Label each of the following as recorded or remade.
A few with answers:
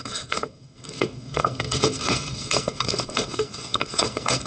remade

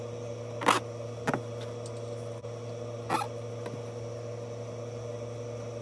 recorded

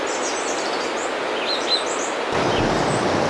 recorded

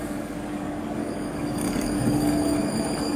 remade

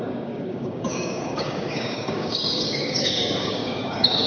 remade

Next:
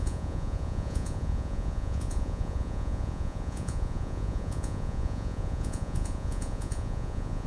remade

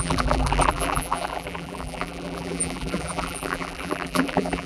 remade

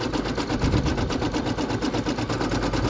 recorded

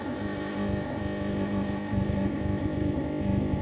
remade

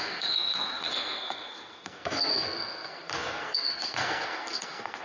remade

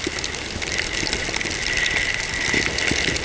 recorded